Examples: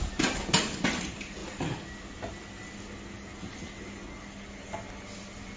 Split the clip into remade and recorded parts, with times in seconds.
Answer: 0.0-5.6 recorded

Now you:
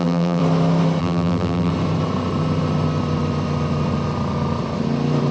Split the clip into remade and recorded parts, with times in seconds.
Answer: 0.0-0.4 remade; 0.4-1.0 recorded; 1.0-1.7 remade; 1.7-5.3 recorded